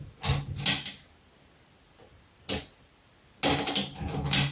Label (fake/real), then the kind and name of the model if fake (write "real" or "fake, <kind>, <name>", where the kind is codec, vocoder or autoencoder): real